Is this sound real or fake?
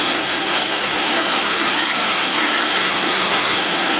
fake